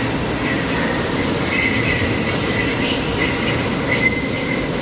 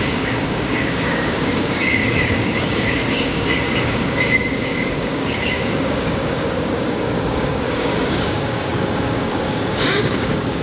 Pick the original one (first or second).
first